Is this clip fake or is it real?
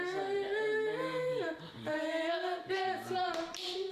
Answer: fake